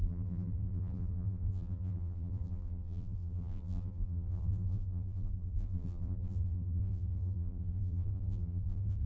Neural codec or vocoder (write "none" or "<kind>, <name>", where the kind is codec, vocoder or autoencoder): vocoder, BigVGAN v2